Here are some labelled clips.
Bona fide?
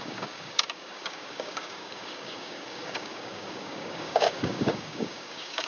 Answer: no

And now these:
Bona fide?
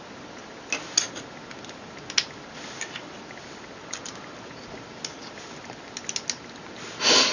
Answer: yes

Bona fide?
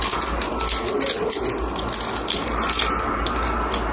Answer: yes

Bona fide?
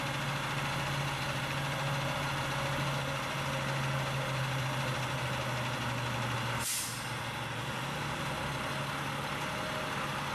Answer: yes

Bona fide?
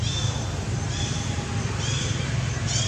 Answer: no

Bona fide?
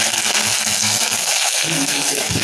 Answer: no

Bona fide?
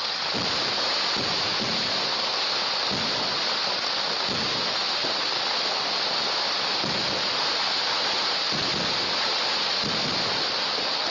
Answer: yes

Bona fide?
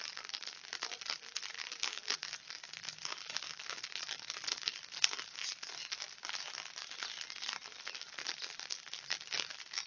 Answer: yes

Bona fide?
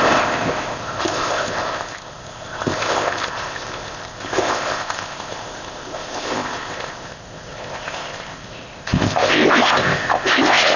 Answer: no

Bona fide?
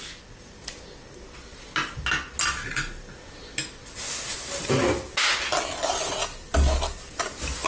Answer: yes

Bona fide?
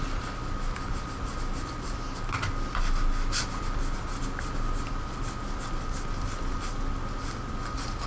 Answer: yes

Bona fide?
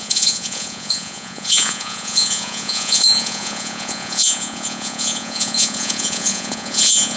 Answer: no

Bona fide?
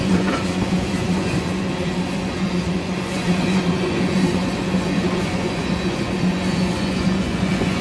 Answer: no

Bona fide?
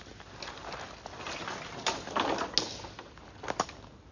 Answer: yes